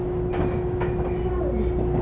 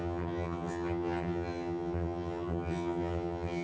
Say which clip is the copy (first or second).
second